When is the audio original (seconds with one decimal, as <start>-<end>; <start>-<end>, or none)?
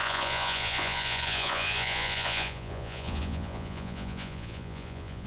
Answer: none